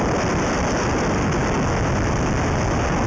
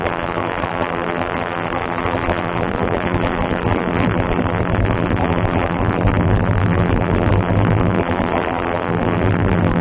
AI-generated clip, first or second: second